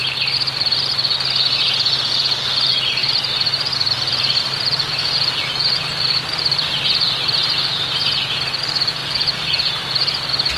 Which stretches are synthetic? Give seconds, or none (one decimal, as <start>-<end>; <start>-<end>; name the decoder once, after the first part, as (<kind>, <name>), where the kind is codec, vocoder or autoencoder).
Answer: 3.0-3.9 (vocoder, BigVGAN v2)